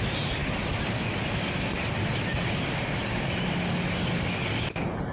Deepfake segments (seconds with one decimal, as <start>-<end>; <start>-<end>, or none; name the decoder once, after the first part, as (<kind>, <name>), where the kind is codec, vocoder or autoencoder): none